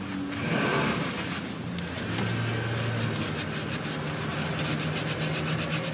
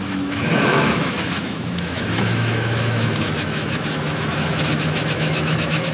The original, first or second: first